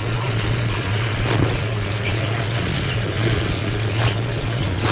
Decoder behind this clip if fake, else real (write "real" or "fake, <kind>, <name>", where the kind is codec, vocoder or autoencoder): fake, vocoder, Vocos